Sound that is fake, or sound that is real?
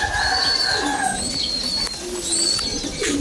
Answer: real